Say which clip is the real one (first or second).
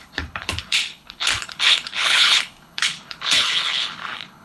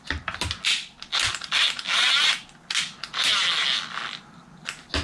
second